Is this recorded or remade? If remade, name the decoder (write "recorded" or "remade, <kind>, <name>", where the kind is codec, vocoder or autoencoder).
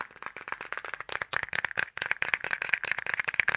recorded